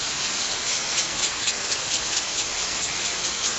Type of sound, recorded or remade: remade